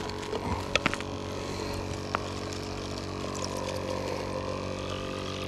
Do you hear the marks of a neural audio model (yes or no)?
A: no